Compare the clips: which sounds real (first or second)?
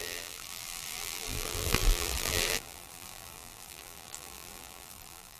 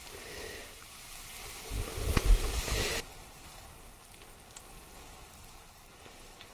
second